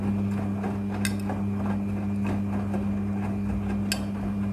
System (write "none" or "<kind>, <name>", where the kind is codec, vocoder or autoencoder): none